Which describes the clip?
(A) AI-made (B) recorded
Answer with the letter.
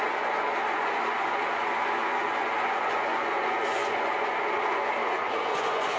A